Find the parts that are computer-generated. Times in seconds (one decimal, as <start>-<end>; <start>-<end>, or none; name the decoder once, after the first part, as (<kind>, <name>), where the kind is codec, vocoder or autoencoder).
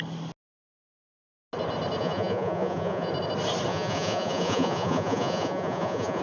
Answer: 2.0-3.1 (vocoder, Vocos); 3.7-6.2